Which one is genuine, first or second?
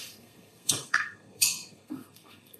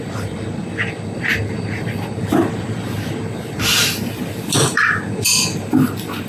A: second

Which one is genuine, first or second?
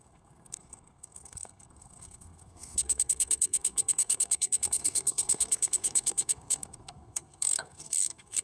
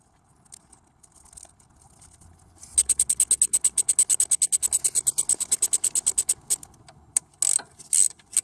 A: second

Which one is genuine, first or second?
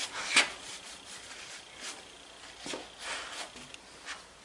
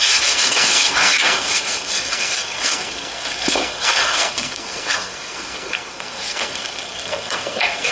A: first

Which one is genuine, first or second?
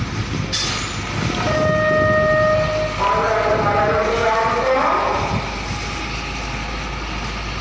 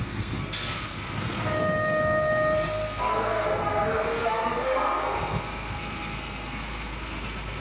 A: first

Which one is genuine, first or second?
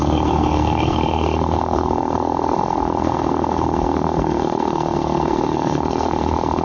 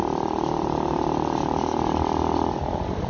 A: second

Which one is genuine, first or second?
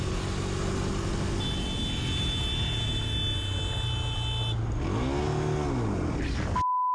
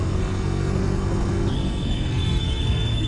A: first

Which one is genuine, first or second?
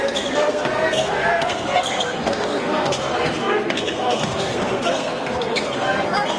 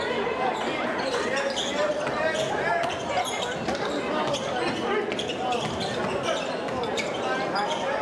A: second